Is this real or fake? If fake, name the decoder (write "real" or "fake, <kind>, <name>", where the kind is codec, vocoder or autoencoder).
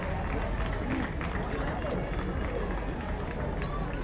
real